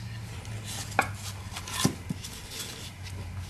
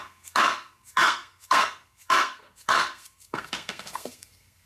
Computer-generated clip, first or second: second